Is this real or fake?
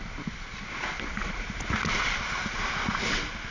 real